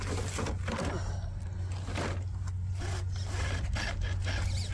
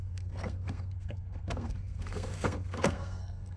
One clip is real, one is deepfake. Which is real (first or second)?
first